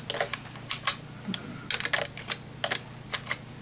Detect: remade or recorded recorded